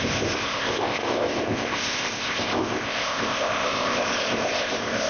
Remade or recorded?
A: remade